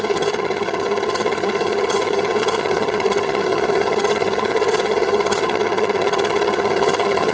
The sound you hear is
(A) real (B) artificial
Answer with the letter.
B